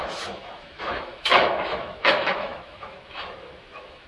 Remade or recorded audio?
remade